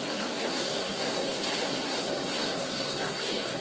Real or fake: fake